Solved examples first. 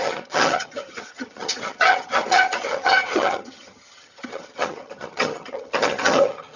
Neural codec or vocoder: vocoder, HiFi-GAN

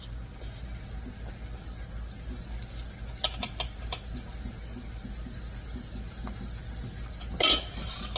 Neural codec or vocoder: none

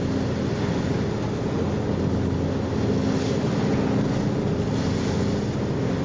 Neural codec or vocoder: none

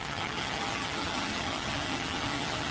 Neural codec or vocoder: vocoder, HiFi-GAN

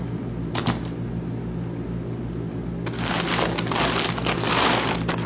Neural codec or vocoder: none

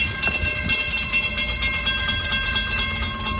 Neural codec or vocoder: none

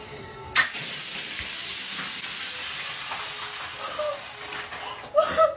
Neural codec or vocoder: none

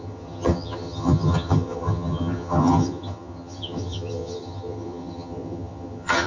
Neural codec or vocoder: vocoder, HiFi-GAN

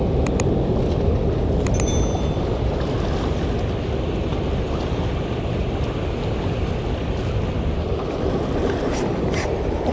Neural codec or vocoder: none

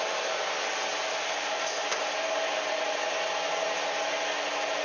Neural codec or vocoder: none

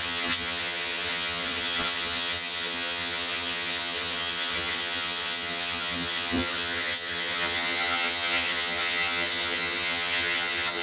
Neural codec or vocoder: vocoder, HiFi-GAN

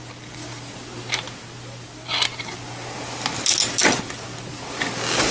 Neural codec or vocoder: none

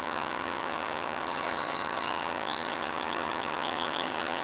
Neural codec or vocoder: vocoder, HiFi-GAN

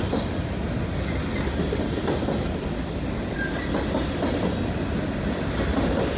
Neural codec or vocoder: none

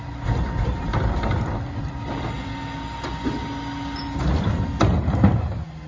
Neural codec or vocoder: none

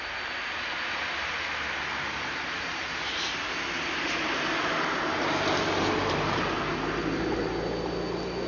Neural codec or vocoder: none